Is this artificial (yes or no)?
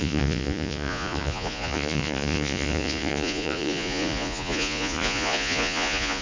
yes